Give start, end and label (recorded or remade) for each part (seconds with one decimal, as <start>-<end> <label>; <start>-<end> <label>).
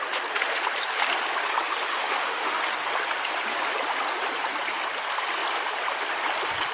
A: 0.0-1.9 recorded; 1.9-2.6 remade; 2.6-6.7 recorded